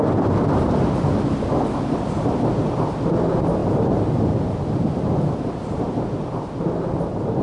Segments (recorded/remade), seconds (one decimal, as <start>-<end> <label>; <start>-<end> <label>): 0.0-7.4 recorded